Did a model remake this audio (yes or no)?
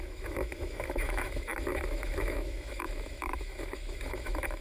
yes